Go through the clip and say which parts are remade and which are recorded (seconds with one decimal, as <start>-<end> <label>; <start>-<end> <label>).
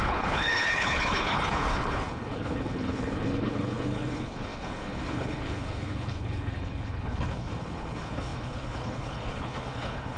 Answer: 0.0-10.2 remade